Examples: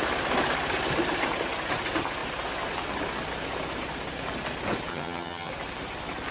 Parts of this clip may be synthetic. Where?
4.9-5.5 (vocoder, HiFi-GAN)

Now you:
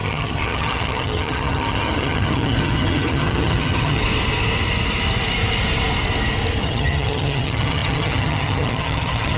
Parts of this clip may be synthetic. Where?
0.0-4.0 (vocoder, HiFi-GAN); 6.6-9.4